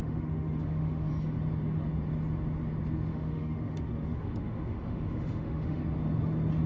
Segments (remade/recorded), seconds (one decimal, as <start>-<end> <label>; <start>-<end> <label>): 0.0-1.1 remade; 1.1-3.1 recorded; 3.1-5.8 remade; 5.8-6.7 recorded